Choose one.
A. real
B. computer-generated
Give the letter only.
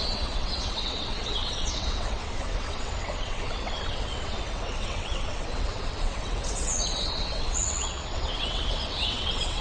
B